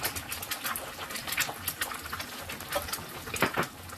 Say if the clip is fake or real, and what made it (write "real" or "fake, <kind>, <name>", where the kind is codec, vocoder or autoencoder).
real